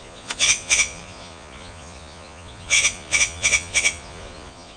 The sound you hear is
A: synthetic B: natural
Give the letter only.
A